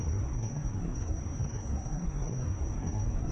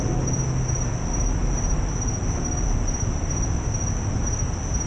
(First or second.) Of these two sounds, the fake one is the first